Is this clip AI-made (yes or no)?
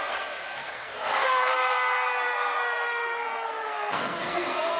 yes